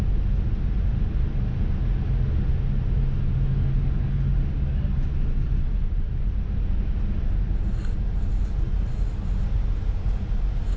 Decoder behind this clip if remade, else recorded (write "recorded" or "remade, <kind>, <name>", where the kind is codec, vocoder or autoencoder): recorded